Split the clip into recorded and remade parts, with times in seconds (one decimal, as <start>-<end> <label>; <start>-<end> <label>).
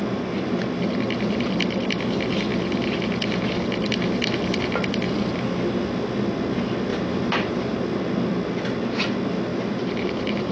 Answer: 0.0-6.9 recorded; 6.9-7.8 remade; 7.8-9.5 recorded; 9.5-10.5 remade